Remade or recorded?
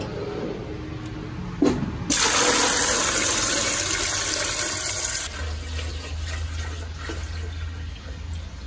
recorded